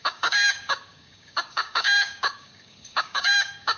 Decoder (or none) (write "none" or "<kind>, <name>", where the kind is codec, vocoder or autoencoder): codec, DAC